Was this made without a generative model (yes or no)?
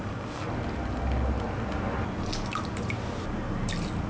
yes